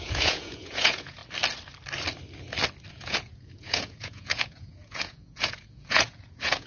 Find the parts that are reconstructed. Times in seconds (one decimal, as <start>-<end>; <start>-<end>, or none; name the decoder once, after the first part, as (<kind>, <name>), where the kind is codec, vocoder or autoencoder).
0.0-1.2 (vocoder, Vocos); 2.9-6.7